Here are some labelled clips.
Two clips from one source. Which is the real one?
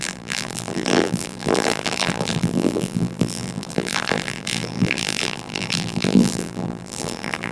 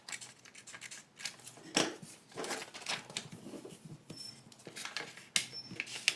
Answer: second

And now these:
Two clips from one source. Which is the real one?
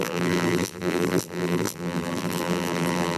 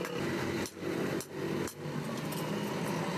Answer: second